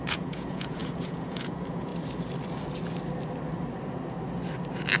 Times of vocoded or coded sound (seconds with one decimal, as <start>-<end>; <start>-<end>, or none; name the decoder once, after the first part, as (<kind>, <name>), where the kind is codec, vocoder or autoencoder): 0.0-1.9 (vocoder, Vocos)

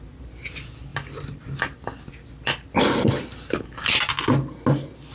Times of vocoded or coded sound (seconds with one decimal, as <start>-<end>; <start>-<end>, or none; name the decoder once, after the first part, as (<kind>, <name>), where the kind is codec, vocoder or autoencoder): none